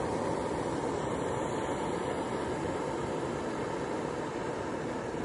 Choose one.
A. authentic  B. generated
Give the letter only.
A